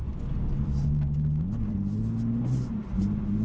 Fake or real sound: real